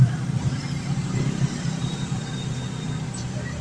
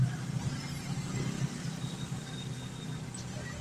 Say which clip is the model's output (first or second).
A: first